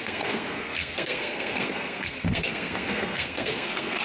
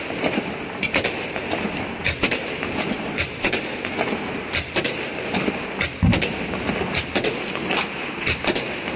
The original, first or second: second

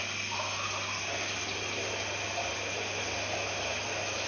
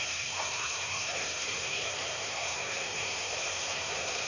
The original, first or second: first